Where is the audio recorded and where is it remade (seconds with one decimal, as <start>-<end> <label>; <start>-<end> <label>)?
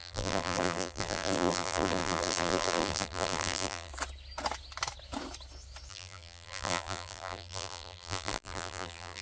0.0-3.9 remade; 3.9-5.9 recorded; 5.9-9.2 remade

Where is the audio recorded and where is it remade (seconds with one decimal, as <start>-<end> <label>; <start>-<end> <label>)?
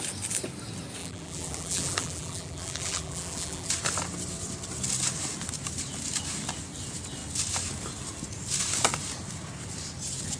0.0-1.0 recorded; 1.0-3.7 remade; 3.7-10.4 recorded